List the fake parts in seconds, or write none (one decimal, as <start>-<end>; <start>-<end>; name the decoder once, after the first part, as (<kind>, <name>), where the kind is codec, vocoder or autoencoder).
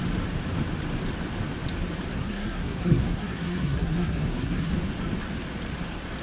2.1-4.7 (codec, SNAC)